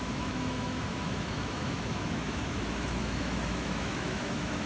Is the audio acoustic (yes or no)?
no